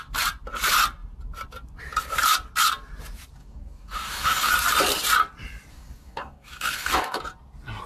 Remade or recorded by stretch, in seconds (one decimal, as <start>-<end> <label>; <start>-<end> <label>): 0.0-3.4 recorded; 3.4-4.5 remade; 4.5-5.7 recorded; 5.7-7.2 remade; 7.2-7.9 recorded

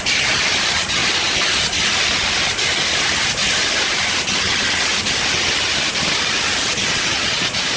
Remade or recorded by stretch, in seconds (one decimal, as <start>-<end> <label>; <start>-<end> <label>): 0.0-6.8 recorded; 6.8-7.8 remade

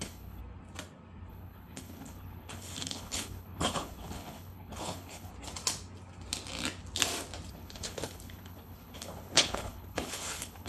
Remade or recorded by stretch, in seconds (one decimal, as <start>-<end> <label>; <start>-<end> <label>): 0.0-0.4 remade; 0.4-1.3 recorded; 1.3-5.3 remade; 5.3-7.5 recorded; 7.5-10.7 remade

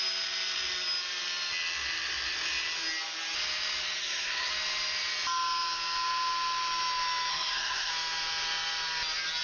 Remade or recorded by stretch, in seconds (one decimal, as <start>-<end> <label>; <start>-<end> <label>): 0.0-4.0 recorded; 4.0-4.5 remade; 4.5-7.3 recorded; 7.3-7.9 remade; 7.9-9.4 recorded

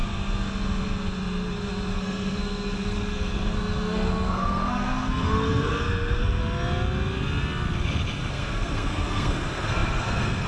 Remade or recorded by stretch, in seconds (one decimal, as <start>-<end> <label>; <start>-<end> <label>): 0.0-1.9 recorded; 1.9-6.4 remade; 6.4-8.3 recorded; 8.3-10.5 remade

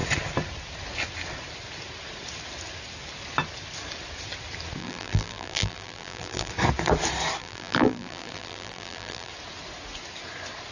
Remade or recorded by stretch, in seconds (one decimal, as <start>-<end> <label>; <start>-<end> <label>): 0.0-4.8 recorded; 4.8-6.5 remade; 6.5-7.4 recorded; 7.4-9.3 remade; 9.3-10.7 recorded

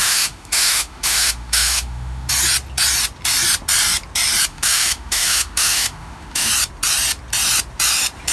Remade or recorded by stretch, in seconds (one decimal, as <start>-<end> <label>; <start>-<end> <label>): 0.0-2.3 remade; 2.3-4.5 recorded; 4.5-6.5 remade; 6.5-8.3 recorded